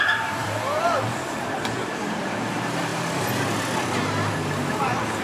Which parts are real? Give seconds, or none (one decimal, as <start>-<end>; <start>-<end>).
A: 0.4-1.4; 2.9-4.4

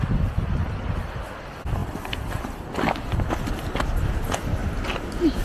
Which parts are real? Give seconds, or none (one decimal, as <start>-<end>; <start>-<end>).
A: 0.0-4.6

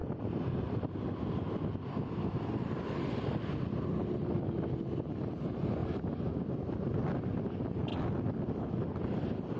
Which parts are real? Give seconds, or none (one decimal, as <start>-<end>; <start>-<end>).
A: 0.0-9.6

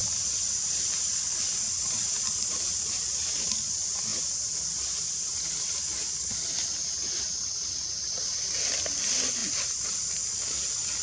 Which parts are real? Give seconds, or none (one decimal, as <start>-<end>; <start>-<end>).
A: 0.6-11.0